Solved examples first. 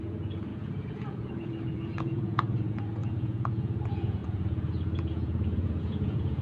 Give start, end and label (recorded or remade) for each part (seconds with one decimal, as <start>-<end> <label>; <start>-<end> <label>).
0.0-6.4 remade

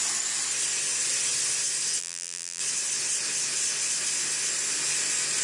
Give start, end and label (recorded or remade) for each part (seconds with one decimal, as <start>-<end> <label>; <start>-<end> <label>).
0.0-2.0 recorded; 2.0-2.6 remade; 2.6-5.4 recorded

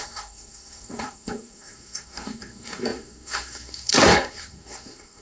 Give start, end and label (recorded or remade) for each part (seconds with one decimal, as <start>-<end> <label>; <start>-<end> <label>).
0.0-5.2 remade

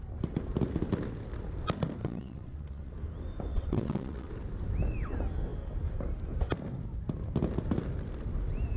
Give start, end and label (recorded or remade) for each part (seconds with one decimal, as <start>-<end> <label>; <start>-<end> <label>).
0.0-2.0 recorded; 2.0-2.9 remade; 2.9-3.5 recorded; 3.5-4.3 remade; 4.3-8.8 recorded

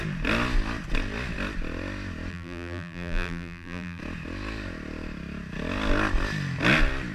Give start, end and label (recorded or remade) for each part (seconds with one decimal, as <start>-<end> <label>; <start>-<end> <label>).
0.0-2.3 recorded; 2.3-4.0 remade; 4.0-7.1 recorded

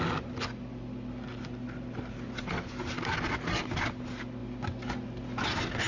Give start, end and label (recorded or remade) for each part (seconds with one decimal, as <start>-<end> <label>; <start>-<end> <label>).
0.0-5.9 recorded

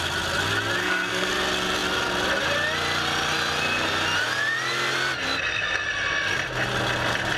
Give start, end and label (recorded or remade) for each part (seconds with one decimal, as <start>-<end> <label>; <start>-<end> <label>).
0.0-0.8 recorded; 0.8-1.3 remade; 1.3-7.4 recorded